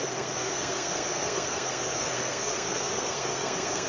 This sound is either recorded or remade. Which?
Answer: remade